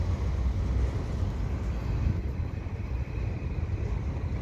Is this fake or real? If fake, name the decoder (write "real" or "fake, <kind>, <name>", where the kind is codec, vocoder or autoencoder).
real